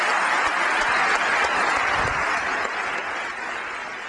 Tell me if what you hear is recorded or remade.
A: recorded